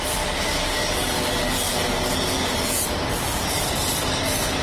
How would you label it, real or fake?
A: real